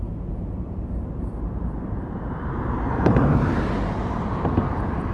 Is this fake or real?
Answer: fake